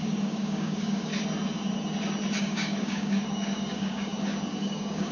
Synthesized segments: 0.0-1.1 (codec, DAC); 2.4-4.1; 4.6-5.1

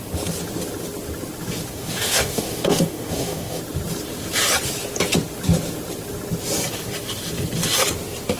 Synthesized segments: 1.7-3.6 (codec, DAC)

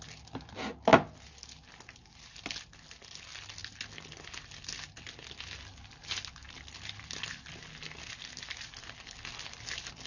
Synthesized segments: none

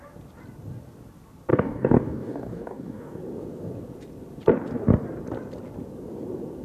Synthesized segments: 1.5-3.2 (codec, DAC)